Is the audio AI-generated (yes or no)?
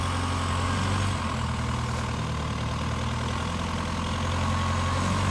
no